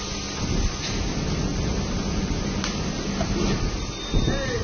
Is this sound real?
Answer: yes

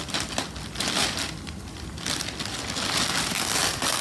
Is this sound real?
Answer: yes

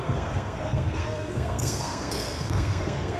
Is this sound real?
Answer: no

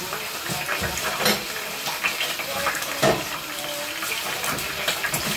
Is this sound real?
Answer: yes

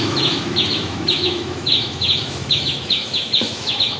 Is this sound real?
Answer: no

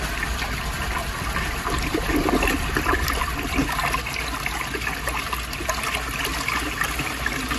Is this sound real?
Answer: yes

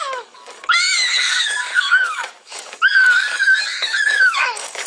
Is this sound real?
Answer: no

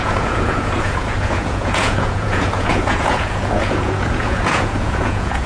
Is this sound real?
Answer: no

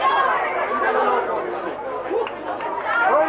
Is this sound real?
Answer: yes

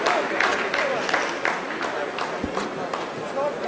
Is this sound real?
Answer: yes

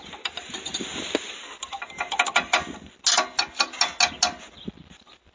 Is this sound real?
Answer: yes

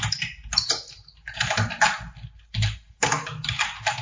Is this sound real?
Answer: yes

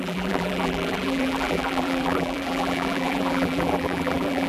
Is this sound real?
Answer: no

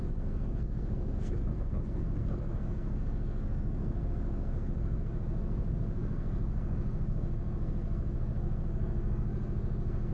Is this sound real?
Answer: no